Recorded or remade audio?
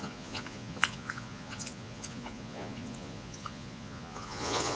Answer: remade